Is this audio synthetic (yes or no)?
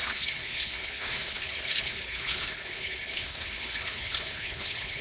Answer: yes